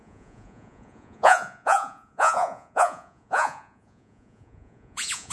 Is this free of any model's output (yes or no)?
no